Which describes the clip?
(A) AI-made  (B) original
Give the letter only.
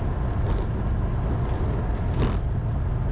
B